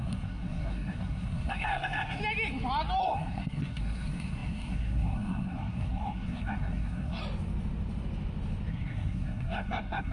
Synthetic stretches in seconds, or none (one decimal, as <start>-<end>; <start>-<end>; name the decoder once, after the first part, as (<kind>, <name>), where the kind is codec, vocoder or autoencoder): 0.0-2.2 (codec, SNAC); 3.0-7.2; 8.7-10.1